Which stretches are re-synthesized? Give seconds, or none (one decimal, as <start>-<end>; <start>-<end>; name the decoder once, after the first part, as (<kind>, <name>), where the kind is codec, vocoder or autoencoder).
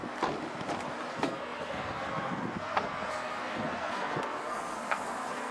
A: 1.1-5.5 (codec, SNAC)